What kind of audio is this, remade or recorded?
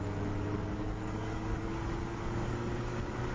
remade